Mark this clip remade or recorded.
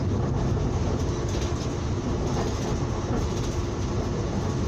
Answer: recorded